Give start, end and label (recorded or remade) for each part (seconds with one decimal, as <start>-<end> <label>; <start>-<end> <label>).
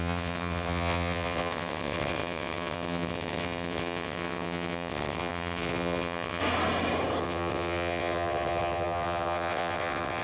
0.0-6.4 remade; 6.4-7.2 recorded; 7.2-10.2 remade